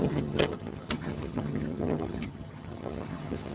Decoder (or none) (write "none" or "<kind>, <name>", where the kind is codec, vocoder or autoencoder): vocoder, HiFi-GAN